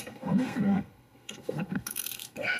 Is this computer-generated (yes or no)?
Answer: yes